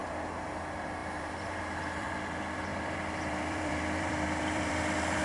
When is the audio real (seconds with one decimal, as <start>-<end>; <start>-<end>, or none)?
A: 0.0-1.0; 2.1-2.7